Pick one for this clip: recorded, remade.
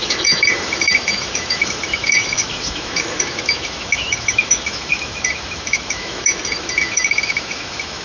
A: remade